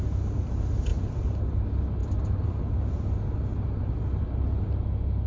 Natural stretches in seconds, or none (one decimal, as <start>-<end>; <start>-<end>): 0.0-0.9; 1.4-2.0; 2.6-5.3